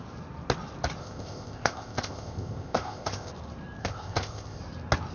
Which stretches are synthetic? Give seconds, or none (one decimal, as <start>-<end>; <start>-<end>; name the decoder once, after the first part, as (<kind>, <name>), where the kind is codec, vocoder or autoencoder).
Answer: 1.0-3.3 (codec, ZipCodec); 3.8-4.6